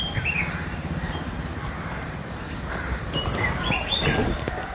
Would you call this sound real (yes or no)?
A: no